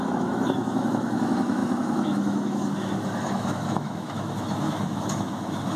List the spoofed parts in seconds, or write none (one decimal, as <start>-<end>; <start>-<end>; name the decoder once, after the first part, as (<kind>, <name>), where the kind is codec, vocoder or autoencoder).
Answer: 0.0-5.8 (autoencoder, DAC-VAE)